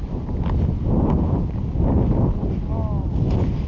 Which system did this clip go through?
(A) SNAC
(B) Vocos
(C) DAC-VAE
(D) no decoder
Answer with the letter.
D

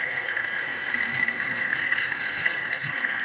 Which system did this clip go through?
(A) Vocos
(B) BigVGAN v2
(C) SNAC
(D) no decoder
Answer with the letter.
C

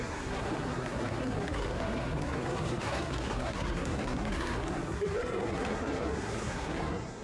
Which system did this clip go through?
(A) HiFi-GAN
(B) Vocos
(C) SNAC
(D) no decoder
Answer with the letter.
C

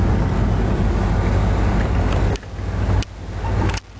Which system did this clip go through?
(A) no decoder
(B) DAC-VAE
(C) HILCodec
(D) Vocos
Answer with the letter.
A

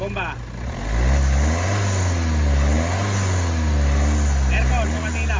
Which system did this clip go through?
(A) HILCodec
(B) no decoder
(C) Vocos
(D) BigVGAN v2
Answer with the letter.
B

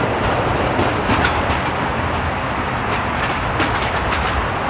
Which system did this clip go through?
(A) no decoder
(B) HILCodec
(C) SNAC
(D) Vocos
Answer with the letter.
A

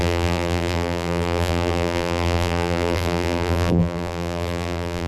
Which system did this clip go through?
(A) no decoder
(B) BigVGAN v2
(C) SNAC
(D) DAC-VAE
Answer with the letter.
B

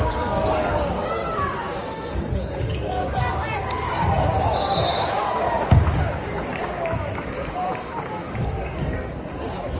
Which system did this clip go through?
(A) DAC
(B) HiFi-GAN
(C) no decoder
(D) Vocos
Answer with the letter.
A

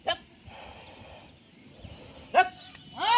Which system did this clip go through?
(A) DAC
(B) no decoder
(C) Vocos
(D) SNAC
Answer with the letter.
B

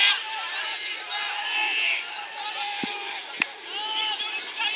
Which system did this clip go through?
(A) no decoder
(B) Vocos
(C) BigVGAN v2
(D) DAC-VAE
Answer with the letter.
C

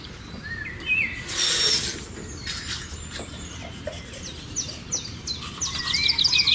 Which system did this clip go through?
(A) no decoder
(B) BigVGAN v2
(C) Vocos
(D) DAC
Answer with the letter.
A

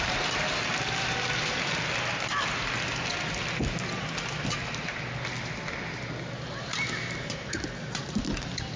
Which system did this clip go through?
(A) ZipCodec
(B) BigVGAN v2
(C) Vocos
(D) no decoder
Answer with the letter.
D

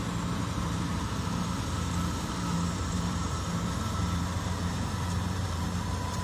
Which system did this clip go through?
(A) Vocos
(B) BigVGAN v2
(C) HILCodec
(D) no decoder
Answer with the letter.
B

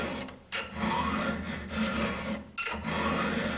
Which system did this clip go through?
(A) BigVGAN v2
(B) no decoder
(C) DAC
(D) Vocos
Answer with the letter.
B